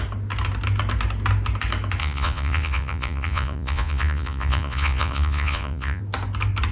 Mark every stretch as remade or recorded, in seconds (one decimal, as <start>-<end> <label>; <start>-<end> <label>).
0.0-2.0 recorded; 2.0-6.0 remade; 6.0-6.7 recorded